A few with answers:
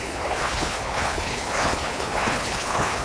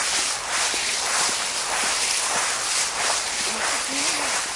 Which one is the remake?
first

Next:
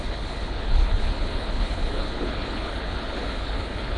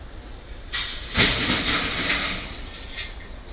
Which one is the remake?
first